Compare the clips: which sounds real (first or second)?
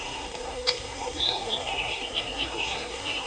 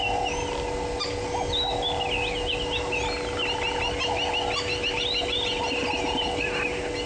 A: second